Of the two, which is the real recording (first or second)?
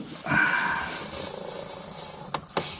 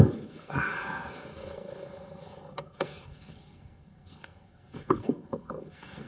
first